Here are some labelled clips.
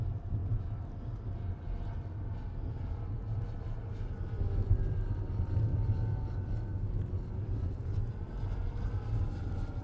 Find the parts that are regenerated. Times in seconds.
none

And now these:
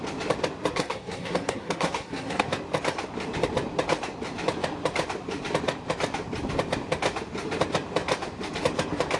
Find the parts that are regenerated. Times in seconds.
0.7-2.5 (codec, SNAC)

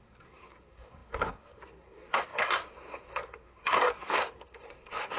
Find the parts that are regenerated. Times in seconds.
0.0-5.2 (codec, SNAC)

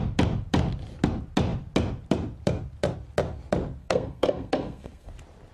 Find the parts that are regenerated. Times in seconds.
3.8-5.1 (codec, SNAC)

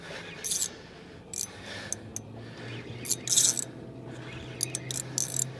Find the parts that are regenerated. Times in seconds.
none

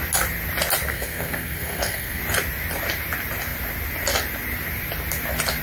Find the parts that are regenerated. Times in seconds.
0.9-2.2 (codec, SNAC)

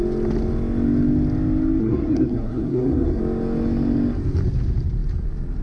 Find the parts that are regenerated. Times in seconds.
1.8-3.2 (codec, SNAC)

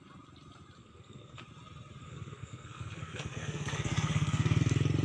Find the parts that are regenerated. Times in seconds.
0.8-1.4 (codec, SNAC); 2.0-4.6